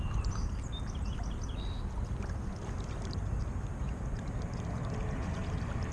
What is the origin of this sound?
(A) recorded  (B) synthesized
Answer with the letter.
A